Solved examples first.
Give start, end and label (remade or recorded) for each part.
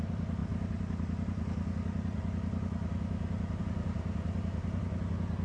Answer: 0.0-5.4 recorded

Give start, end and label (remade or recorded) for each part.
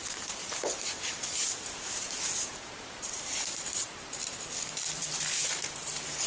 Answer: 0.0-0.4 recorded; 0.4-4.2 remade; 4.2-5.0 recorded; 5.0-6.3 remade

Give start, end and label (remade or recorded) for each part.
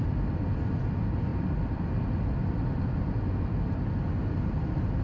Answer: 0.0-1.3 recorded; 1.3-3.0 remade; 3.0-5.0 recorded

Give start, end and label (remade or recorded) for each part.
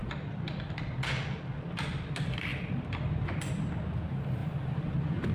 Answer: 0.0-1.1 remade; 1.1-2.5 recorded; 2.5-3.5 remade; 3.5-4.4 recorded; 4.4-5.3 remade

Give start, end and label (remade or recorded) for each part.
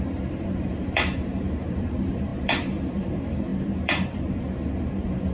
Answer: 0.0-5.3 remade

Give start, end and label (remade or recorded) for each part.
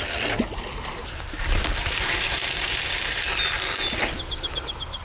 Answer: 0.0-1.0 recorded; 1.0-3.2 remade; 3.2-5.0 recorded